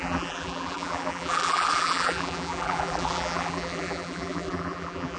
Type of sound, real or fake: fake